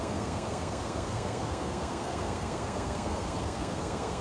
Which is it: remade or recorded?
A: remade